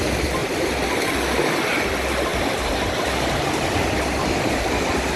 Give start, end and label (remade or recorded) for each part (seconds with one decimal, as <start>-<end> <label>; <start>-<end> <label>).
0.0-5.2 recorded

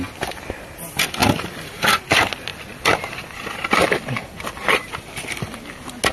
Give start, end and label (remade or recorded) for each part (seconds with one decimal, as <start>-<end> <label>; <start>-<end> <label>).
0.0-2.5 recorded; 2.5-5.2 remade; 5.2-6.1 recorded

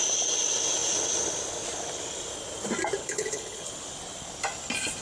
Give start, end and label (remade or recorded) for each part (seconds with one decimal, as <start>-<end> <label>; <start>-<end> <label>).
0.0-3.0 recorded; 3.0-3.7 remade; 3.7-5.0 recorded

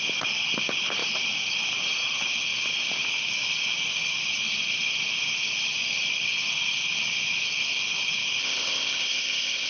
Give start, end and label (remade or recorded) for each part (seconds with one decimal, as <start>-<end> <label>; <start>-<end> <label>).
0.0-8.4 recorded; 8.4-9.7 remade